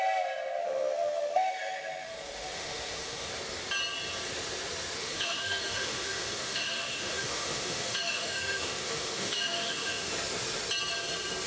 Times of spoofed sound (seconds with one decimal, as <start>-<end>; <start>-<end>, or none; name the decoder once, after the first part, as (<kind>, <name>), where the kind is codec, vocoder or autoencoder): 0.6-3.3 (autoencoder, DAC-VAE); 5.0-10.1